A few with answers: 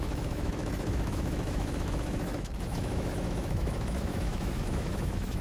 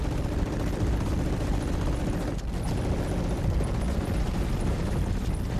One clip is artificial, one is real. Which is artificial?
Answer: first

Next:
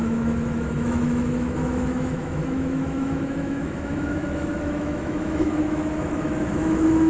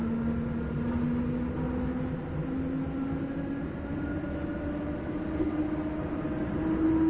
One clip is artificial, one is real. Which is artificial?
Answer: first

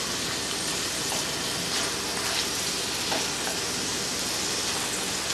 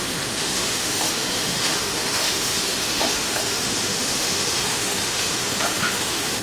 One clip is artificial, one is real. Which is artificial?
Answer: second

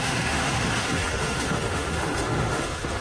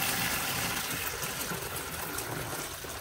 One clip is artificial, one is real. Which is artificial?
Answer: first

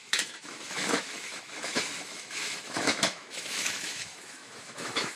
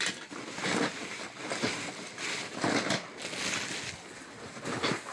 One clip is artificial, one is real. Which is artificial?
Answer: first